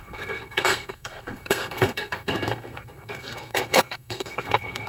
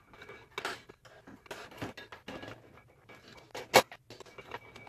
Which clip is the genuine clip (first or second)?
second